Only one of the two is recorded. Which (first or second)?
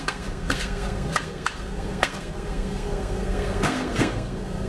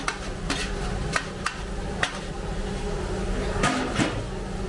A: second